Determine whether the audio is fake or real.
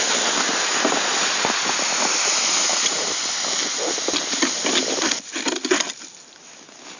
real